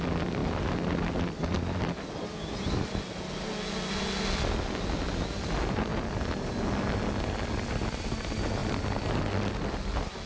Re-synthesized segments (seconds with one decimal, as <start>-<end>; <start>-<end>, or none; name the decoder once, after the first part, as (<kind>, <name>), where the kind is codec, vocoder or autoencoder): none